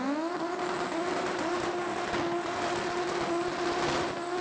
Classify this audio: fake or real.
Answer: real